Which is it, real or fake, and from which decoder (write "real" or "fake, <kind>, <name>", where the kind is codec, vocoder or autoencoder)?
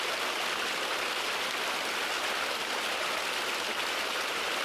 real